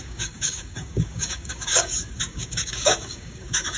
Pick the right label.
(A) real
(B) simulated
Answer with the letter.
B